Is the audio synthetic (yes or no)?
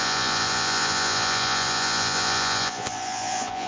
yes